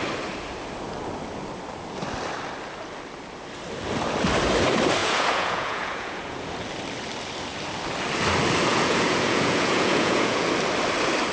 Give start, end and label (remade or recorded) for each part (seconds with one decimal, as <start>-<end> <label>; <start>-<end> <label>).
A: 0.0-5.0 recorded; 5.0-6.5 remade; 6.5-8.7 recorded; 8.7-10.5 remade; 10.5-11.3 recorded